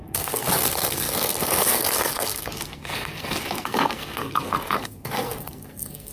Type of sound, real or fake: fake